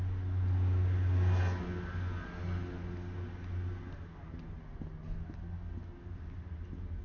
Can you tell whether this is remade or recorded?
recorded